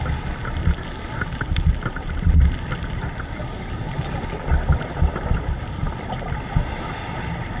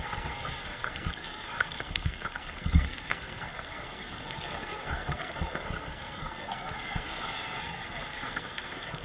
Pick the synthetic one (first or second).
second